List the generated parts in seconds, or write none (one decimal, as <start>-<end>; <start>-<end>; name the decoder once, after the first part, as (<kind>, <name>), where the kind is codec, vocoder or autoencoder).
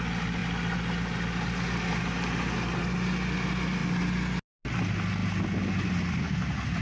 none